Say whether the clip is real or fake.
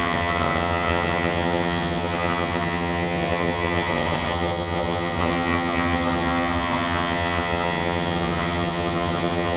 fake